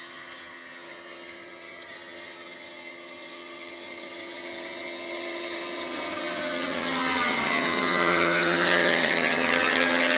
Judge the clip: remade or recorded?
remade